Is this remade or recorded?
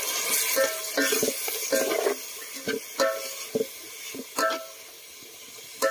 recorded